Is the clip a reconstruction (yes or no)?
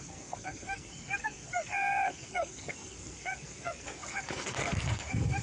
yes